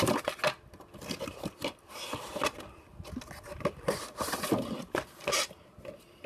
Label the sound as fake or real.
real